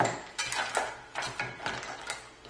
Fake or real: real